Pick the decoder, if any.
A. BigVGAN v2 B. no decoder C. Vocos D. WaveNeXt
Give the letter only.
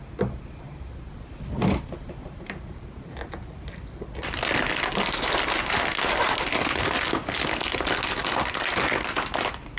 B